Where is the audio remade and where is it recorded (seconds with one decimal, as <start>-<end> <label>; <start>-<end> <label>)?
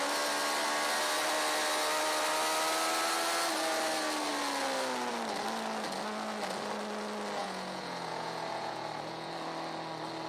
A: 0.0-7.4 recorded; 7.4-9.3 remade; 9.3-10.3 recorded